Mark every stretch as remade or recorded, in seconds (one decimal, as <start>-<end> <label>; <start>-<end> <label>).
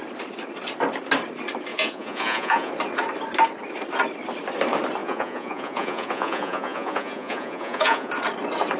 0.0-1.7 recorded; 1.7-2.7 remade; 2.7-5.0 recorded; 5.0-8.1 remade; 8.1-8.8 recorded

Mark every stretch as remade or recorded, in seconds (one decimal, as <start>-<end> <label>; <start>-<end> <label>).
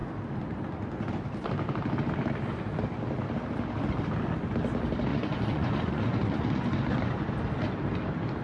0.0-5.1 recorded; 5.1-7.3 remade; 7.3-8.4 recorded